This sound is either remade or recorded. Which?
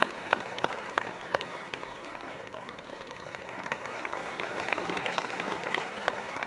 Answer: remade